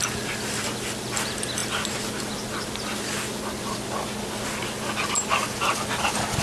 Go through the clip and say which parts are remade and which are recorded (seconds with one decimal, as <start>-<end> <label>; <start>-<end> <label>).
0.0-6.4 recorded